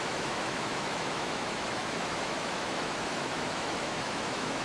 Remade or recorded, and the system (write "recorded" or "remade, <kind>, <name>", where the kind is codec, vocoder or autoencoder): remade, autoencoder, DAC-VAE